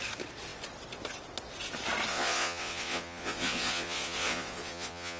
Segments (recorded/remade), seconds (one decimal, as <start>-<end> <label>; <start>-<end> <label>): 0.0-2.1 recorded; 2.1-5.2 remade